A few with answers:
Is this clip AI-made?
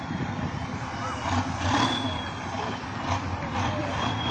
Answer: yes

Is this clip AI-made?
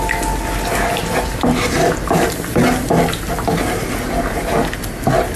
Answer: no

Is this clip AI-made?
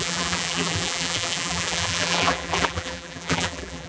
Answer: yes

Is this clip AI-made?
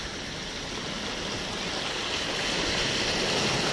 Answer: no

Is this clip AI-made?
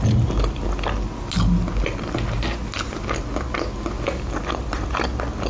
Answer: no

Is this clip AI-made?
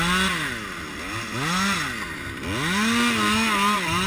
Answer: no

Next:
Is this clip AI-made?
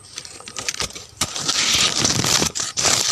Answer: yes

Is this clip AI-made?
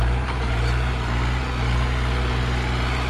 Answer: no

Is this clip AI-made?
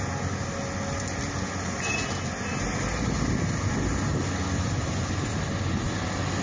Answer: no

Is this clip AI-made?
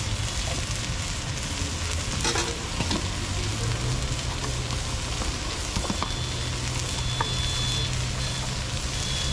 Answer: no